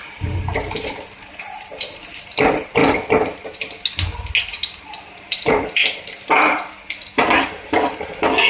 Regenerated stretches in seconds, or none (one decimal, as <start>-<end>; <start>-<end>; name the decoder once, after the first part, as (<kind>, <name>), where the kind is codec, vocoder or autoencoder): 0.0-2.8 (vocoder, BigVGAN v2); 4.4-5.8